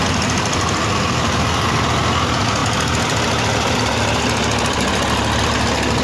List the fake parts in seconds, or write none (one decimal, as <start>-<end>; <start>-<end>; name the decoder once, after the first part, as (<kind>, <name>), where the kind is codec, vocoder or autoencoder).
none